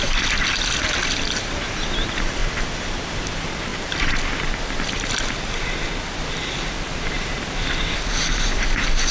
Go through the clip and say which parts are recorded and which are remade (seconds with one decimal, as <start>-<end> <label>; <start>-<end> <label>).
0.0-3.7 recorded; 3.7-7.7 remade; 7.7-9.1 recorded